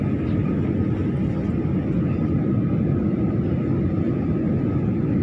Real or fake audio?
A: real